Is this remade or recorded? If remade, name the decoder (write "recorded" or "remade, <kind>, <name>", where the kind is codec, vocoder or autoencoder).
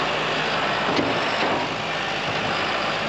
recorded